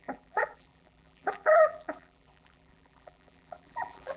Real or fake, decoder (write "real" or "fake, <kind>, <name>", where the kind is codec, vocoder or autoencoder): fake, vocoder, BigVGAN v2